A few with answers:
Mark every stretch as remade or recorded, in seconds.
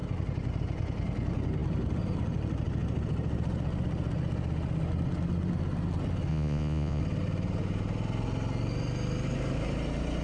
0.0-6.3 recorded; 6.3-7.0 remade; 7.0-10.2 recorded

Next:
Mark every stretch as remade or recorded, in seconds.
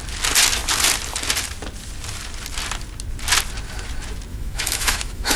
0.0-4.3 recorded; 4.3-5.4 remade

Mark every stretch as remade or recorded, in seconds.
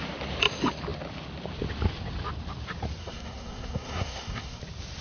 0.0-3.0 recorded; 3.0-4.6 remade; 4.6-5.0 recorded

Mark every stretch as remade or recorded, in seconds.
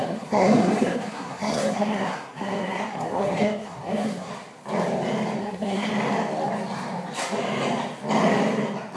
0.0-4.3 remade; 4.3-5.4 recorded; 5.4-5.9 remade; 5.9-9.0 recorded